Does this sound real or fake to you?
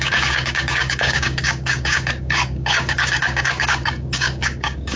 fake